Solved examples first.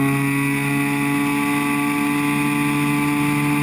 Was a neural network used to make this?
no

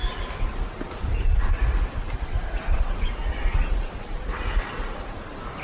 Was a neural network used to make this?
no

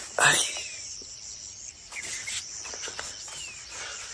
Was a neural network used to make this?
no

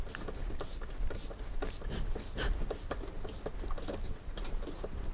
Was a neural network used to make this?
no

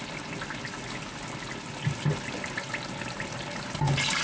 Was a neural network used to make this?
no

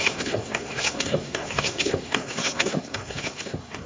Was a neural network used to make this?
yes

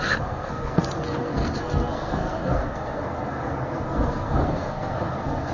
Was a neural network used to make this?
yes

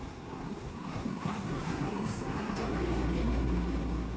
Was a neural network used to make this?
yes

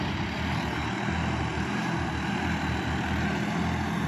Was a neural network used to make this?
no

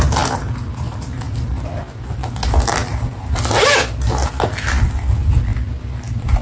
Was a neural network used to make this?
no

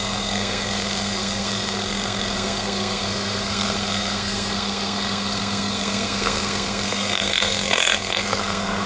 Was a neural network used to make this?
yes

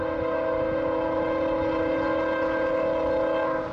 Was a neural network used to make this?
no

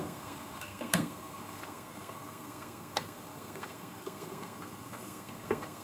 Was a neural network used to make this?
yes